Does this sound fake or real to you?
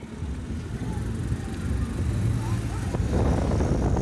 real